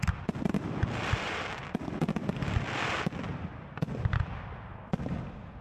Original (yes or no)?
yes